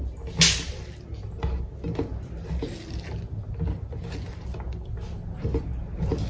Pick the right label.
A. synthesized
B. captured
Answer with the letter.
B